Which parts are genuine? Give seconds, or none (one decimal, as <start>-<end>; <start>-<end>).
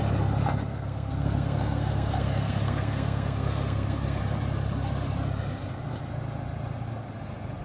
0.0-0.7; 4.2-7.6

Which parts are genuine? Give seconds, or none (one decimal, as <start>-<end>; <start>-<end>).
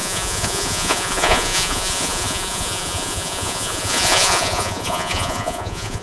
none